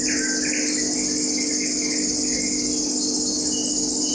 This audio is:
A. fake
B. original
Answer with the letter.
B